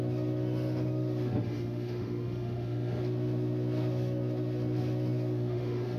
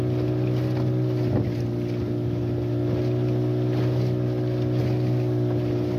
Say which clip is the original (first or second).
second